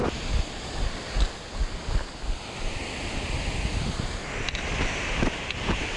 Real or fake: real